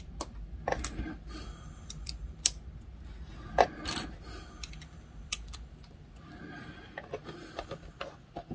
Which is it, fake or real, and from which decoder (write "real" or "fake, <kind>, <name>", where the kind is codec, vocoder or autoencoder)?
real